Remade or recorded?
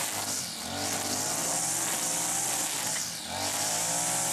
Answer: recorded